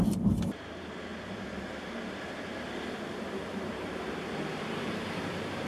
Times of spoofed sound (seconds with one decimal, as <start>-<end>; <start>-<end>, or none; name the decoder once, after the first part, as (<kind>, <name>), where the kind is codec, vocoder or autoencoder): 0.0-1.1 (vocoder, BigVGAN v2); 4.5-5.7